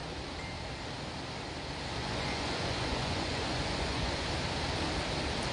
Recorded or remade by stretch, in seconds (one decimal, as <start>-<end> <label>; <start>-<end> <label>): 0.0-2.0 recorded; 2.0-4.3 remade; 4.3-5.5 recorded